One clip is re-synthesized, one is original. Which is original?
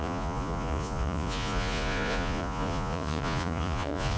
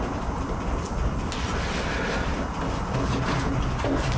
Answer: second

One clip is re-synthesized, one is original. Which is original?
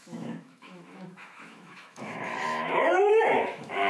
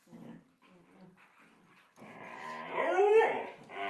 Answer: second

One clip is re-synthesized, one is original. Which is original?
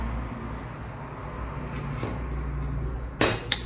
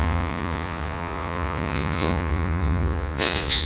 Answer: first